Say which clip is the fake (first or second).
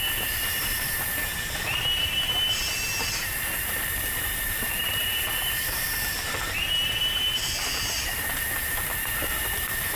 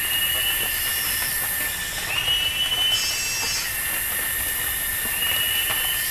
first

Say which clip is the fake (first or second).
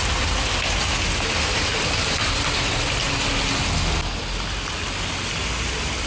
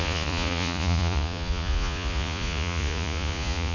second